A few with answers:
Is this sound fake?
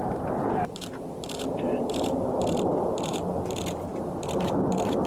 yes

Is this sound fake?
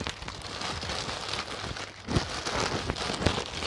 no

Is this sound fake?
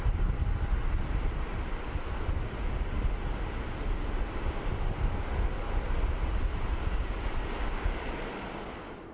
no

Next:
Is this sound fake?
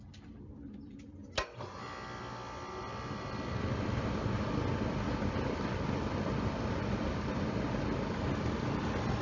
no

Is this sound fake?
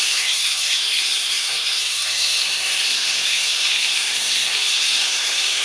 yes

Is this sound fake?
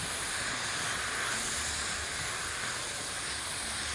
no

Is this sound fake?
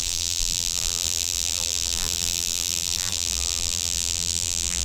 yes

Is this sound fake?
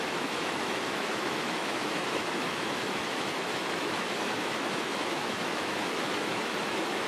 yes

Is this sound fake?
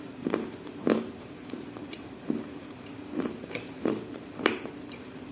yes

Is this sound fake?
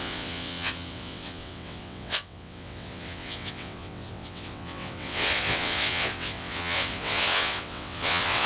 yes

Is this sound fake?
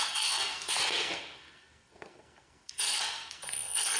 yes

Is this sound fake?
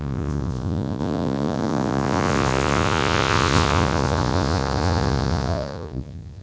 yes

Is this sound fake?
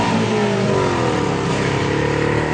no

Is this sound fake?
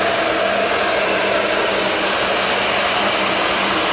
no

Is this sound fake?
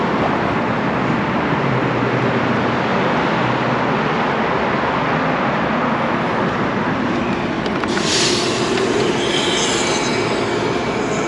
no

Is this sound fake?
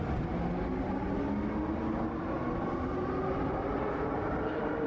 no